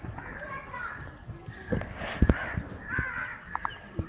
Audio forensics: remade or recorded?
remade